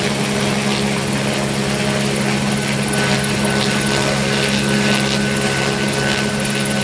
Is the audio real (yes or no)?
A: yes